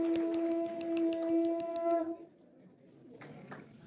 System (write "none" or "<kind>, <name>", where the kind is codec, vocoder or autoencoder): none